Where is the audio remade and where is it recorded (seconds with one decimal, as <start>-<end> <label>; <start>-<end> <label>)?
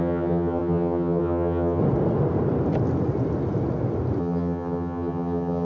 0.0-1.8 remade; 1.8-4.2 recorded; 4.2-5.6 remade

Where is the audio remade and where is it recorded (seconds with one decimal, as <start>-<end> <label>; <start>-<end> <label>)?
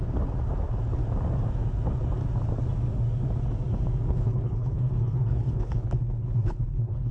0.0-4.1 recorded; 4.1-7.1 remade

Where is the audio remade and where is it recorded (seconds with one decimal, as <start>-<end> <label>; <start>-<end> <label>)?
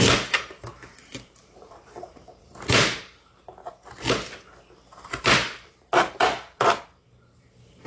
0.0-3.6 remade; 3.6-5.0 recorded; 5.0-7.9 remade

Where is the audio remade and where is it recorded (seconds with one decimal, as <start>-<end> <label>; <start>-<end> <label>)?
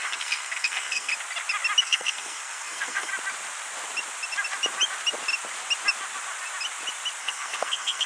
0.0-1.1 remade; 1.1-1.8 recorded; 1.8-3.1 remade; 3.1-7.2 recorded; 7.2-8.1 remade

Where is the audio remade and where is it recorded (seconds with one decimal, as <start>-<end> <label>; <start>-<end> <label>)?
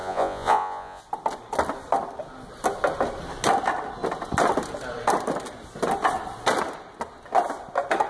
0.0-1.0 remade; 1.0-8.1 recorded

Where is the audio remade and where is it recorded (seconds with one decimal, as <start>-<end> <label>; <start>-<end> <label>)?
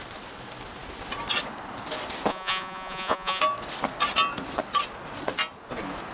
0.0-2.3 recorded; 2.3-3.4 remade; 3.4-6.1 recorded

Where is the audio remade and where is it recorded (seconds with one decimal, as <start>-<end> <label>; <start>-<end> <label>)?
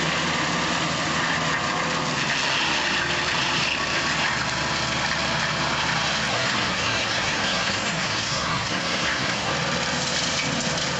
0.0-6.3 recorded; 6.3-9.5 remade; 9.5-11.0 recorded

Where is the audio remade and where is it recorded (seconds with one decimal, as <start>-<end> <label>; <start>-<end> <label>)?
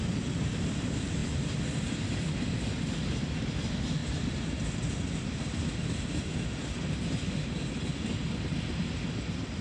0.0-4.0 recorded; 4.0-7.0 remade; 7.0-9.6 recorded